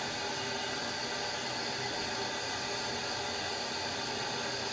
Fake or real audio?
real